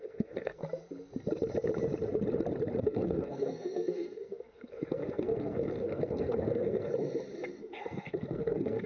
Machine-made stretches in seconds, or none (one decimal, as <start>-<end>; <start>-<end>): 0.0-0.6; 2.8-6.9; 7.8-8.9